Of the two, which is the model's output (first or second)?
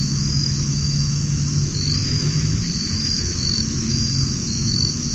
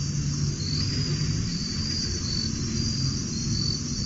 first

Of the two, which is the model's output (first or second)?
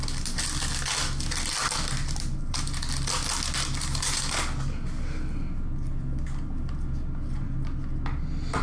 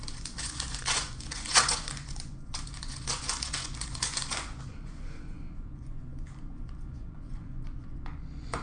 second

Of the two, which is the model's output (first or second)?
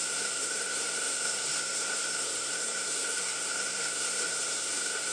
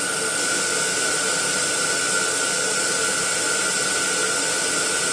first